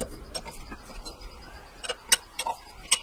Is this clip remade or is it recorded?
recorded